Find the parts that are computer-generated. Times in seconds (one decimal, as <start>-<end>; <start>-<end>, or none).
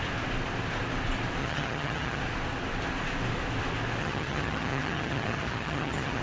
1.4-2.2; 4.0-6.2